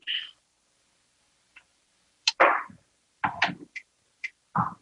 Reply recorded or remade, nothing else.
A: remade